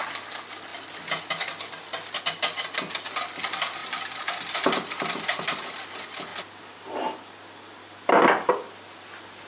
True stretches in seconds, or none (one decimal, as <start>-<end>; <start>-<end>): 0.0-9.5